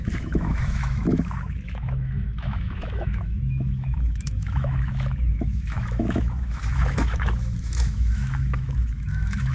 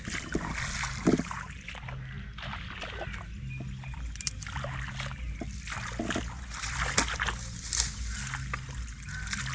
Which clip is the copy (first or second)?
first